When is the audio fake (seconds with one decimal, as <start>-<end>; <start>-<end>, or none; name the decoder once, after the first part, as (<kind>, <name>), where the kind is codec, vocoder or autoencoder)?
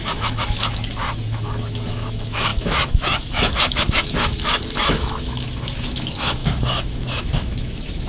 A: 0.0-8.1 (autoencoder, DAC-VAE)